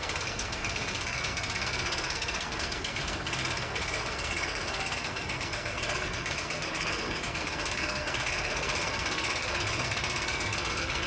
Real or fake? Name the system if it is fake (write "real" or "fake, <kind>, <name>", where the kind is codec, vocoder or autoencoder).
fake, codec, SNAC